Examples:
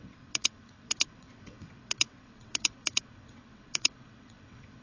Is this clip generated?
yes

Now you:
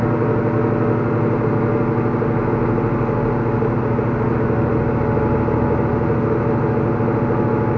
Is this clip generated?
no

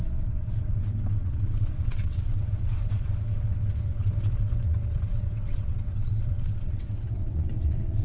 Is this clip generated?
yes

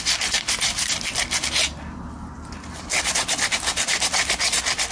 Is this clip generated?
no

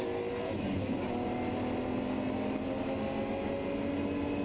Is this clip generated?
no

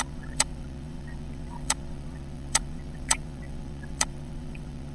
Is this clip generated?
yes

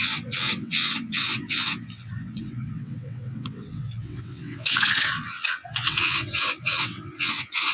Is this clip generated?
yes